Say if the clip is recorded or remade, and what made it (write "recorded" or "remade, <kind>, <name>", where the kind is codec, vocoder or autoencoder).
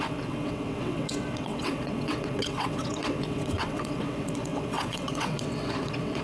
remade, vocoder, WaveNeXt